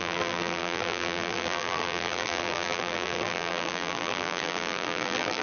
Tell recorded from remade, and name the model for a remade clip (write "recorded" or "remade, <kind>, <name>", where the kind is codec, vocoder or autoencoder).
remade, vocoder, BigVGAN v2